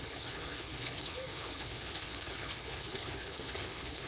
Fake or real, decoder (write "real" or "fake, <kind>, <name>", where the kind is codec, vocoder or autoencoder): fake, codec, HILCodec